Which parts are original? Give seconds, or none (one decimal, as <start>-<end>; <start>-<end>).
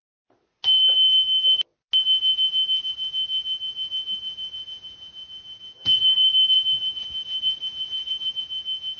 0.0-5.8; 8.4-9.0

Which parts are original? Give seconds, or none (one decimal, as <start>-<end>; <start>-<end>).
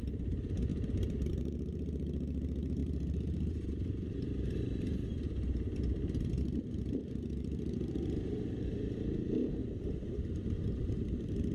0.7-1.3; 9.6-10.2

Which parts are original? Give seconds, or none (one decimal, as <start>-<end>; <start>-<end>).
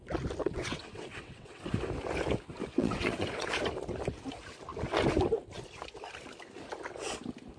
0.0-0.4; 1.7-2.7; 3.5-7.6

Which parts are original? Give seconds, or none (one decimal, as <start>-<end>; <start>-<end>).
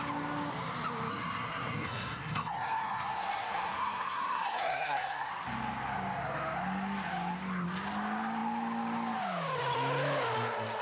0.0-1.1; 5.3-10.8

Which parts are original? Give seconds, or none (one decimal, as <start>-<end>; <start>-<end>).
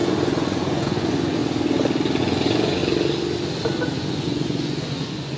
1.4-2.2; 2.8-4.0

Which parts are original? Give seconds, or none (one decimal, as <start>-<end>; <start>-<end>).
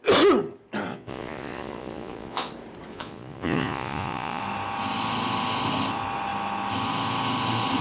0.0-0.9; 2.5-2.9; 4.4-7.8